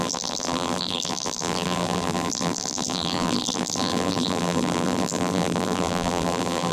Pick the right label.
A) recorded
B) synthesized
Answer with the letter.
B